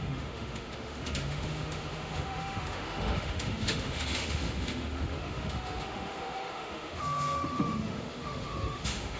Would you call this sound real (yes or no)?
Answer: no